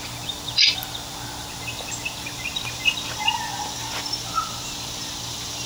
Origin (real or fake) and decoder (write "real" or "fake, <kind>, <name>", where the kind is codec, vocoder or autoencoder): real